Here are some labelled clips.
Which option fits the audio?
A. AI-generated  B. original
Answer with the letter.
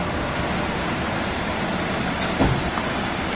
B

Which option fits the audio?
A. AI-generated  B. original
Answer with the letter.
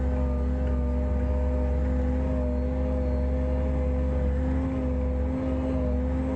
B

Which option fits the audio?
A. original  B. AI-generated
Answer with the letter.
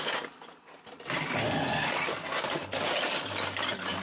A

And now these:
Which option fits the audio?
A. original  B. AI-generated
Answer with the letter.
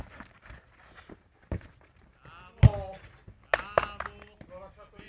A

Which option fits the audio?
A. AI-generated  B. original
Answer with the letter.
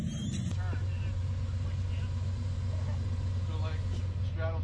B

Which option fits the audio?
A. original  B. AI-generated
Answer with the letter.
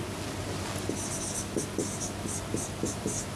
A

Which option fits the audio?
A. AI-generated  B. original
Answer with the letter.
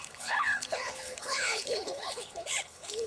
A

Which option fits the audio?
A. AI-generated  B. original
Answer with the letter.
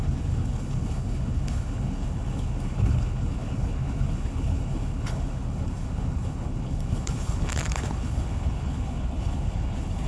A